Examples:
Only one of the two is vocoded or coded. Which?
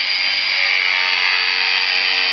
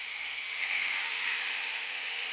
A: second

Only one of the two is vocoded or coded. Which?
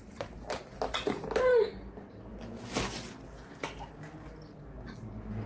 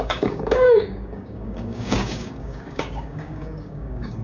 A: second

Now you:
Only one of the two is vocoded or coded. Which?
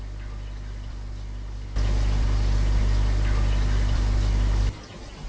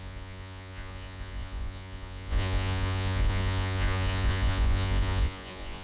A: second